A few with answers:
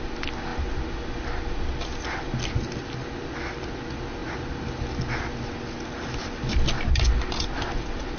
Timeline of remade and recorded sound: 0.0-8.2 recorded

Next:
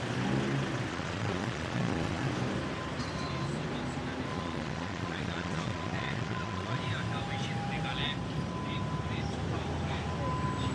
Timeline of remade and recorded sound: 0.0-0.9 recorded; 0.9-2.3 remade; 2.3-4.3 recorded; 4.3-6.8 remade; 6.8-10.7 recorded